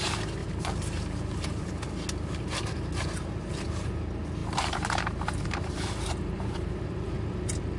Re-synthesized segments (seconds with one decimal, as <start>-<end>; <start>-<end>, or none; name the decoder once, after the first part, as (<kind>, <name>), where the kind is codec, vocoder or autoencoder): 0.4-1.7 (vocoder, BigVGAN v2); 4.4-6.7